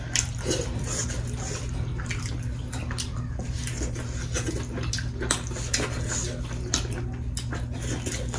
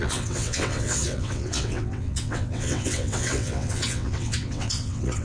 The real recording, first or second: first